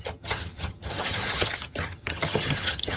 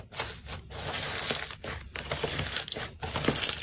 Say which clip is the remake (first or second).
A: first